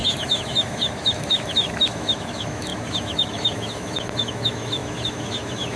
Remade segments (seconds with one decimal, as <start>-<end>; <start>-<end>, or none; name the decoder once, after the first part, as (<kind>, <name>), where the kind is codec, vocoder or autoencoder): 0.0-5.8 (autoencoder, DAC-VAE)